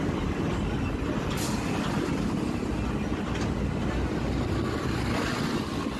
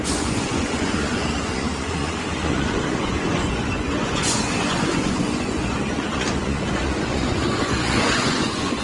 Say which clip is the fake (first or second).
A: second